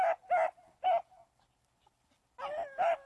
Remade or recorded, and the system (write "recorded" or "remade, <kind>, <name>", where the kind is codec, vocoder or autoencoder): recorded